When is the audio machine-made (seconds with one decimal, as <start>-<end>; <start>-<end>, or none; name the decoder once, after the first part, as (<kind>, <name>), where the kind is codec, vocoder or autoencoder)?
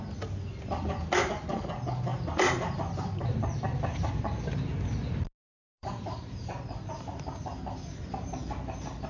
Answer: 2.1-4.2 (vocoder, BigVGAN v2); 5.4-6.9; 8.4-9.1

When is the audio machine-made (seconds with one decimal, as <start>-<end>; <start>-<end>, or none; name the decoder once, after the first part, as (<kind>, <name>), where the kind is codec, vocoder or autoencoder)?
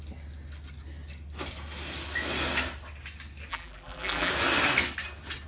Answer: 3.5-4.3 (vocoder, BigVGAN v2)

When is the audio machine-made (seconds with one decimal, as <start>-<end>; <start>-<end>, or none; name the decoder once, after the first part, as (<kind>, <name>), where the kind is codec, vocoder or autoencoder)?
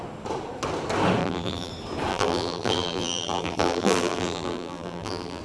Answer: 1.2-1.7 (vocoder, BigVGAN v2); 2.1-5.4